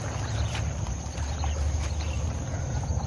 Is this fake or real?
real